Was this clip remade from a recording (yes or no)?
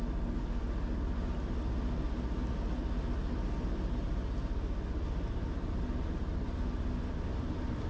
no